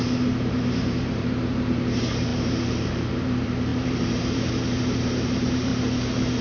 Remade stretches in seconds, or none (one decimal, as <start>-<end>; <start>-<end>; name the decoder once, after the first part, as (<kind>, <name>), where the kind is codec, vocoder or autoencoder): 0.0-5.7 (vocoder, BigVGAN v2)